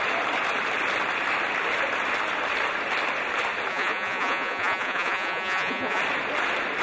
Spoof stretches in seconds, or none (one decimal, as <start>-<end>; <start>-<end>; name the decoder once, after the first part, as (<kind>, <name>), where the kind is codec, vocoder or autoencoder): 3.7-6.0 (vocoder, Vocos)